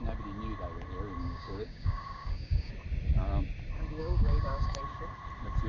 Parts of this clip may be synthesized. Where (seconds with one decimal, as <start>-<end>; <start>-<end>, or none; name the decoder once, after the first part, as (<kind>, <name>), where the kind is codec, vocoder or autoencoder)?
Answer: 1.2-2.7 (codec, DAC); 4.0-4.8